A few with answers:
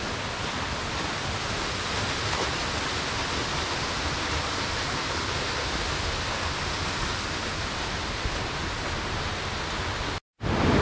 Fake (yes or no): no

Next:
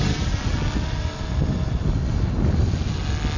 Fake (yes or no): no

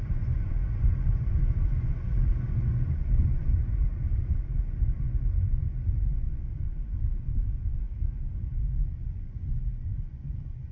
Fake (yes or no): yes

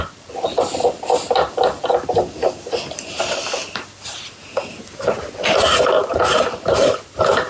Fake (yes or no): no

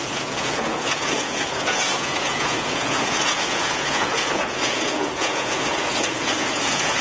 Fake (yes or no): yes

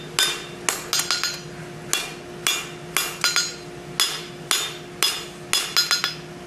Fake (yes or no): no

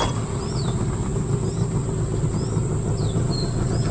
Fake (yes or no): no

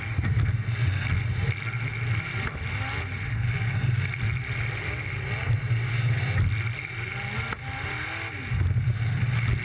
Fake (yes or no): no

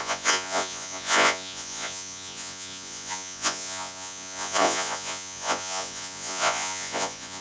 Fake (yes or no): yes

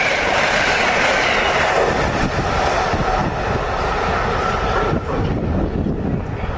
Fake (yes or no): no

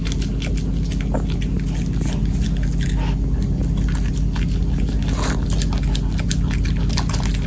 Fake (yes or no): no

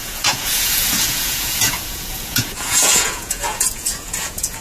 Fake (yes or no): yes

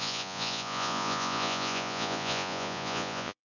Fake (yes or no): yes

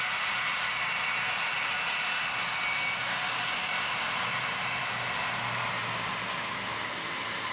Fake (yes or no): no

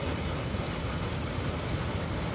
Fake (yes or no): no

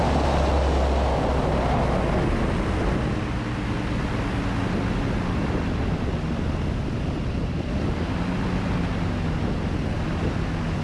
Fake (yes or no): no